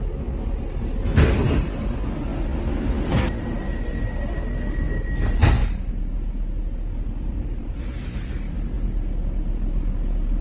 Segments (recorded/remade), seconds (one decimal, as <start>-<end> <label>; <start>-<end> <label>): 0.0-7.3 recorded; 7.3-8.1 remade; 8.1-10.4 recorded